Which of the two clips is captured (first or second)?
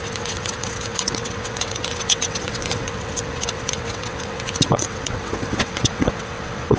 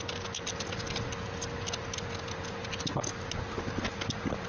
second